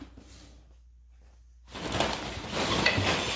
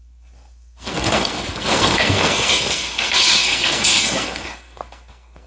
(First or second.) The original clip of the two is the first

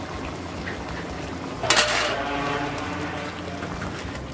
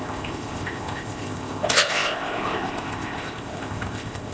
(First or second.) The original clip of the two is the first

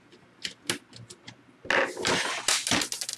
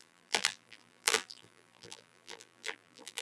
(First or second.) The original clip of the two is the first